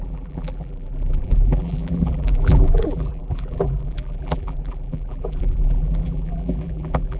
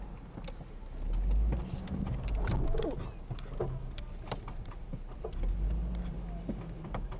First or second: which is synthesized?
first